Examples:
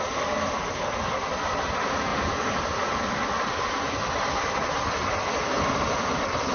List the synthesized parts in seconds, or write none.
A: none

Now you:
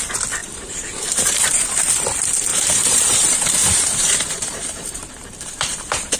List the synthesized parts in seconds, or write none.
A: 0.4-1.8; 2.5-6.2

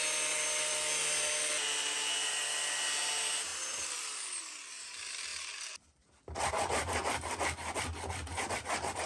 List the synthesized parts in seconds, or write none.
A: none

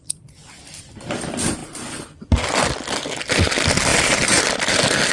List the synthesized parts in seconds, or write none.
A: 0.0-1.6; 3.2-5.1

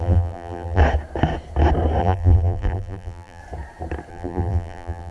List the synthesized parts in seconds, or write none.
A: 0.0-0.8; 2.0-3.4; 4.1-5.1

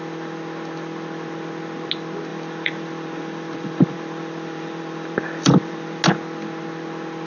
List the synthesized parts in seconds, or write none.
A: 2.3-6.0

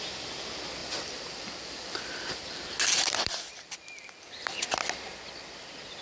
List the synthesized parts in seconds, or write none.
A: 0.8-4.4

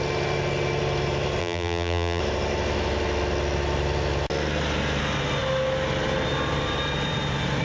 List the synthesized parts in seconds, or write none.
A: 1.4-2.2